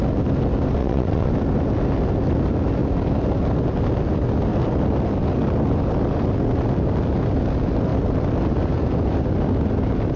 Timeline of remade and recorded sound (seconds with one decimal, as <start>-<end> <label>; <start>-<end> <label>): 0.0-0.8 recorded; 0.8-1.3 remade; 1.3-10.2 recorded